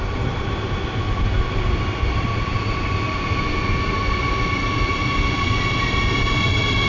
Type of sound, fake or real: real